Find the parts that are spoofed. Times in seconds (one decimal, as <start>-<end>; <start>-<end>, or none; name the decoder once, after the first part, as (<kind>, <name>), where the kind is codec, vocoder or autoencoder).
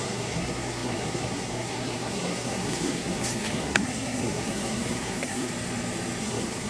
0.0-5.5 (codec, SNAC); 6.2-6.7